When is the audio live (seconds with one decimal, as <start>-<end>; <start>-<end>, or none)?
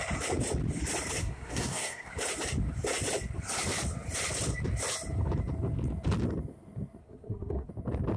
0.0-1.2; 2.1-7.0; 7.7-8.2